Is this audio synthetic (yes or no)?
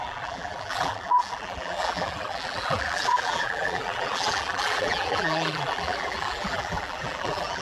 yes